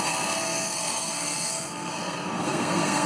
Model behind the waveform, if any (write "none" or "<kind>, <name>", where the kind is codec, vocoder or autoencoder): codec, SNAC